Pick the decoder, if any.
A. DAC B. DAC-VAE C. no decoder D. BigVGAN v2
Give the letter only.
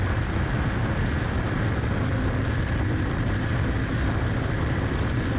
C